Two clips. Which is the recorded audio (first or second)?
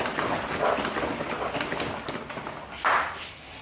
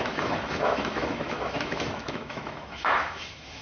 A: first